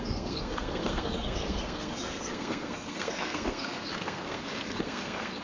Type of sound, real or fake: fake